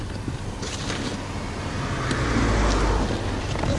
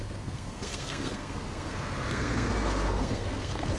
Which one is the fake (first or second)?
second